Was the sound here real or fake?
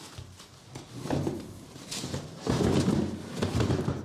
real